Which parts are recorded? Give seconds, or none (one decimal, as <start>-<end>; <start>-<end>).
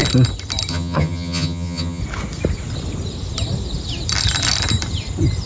0.0-0.7; 2.0-5.5